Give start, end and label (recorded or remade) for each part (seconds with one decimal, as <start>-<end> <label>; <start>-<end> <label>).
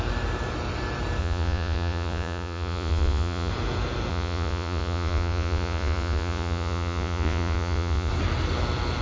0.0-1.2 recorded; 1.2-3.5 remade; 3.5-4.1 recorded; 4.1-8.1 remade; 8.1-9.0 recorded